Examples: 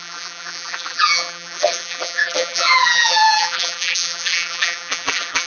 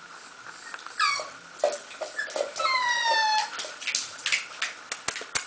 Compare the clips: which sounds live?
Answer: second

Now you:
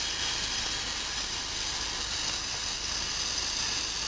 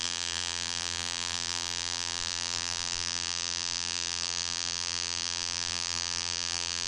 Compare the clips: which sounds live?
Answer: first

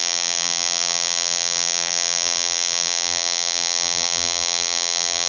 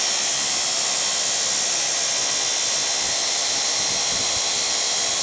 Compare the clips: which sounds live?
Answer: second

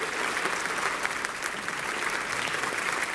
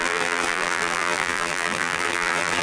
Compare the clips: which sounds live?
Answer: first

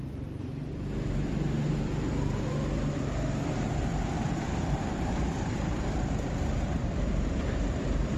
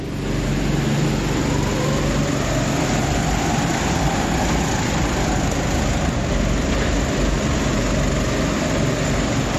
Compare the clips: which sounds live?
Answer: second